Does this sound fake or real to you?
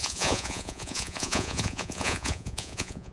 fake